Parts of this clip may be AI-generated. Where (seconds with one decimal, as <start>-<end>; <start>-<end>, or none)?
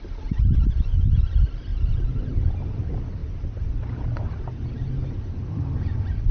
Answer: none